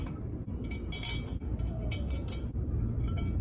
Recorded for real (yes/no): yes